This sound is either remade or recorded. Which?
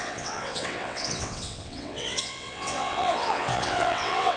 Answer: remade